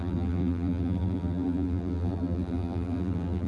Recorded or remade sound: remade